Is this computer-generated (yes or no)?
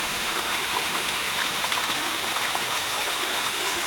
yes